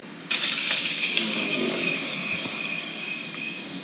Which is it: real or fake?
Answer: fake